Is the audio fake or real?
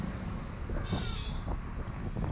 real